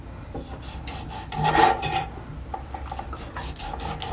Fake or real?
real